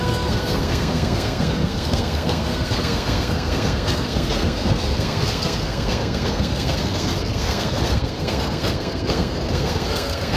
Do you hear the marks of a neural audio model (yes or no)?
yes